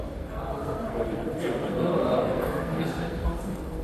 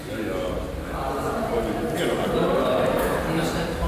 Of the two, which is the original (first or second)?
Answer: second